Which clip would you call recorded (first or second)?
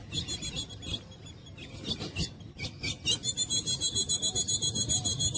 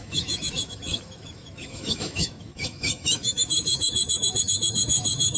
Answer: first